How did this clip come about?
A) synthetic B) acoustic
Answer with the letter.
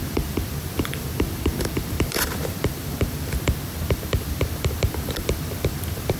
A